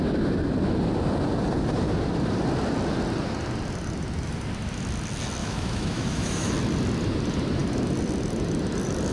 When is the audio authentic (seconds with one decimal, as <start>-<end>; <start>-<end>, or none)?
0.0-5.4; 6.5-9.1